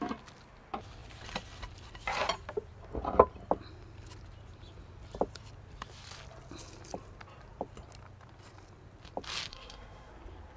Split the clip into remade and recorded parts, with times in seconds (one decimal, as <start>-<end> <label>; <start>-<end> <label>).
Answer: 0.0-9.5 recorded; 9.5-10.1 remade; 10.1-10.6 recorded